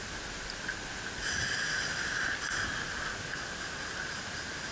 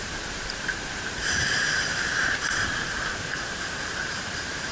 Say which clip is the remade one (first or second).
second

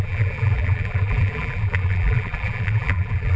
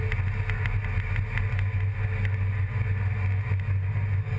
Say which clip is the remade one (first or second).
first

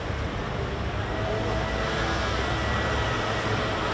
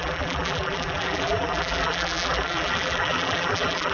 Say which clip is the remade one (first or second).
second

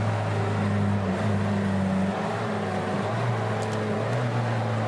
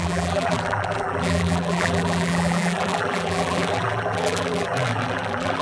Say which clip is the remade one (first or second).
second